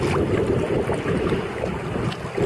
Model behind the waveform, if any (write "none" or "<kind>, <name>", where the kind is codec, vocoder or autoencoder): none